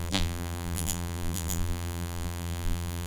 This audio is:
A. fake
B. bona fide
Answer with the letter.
A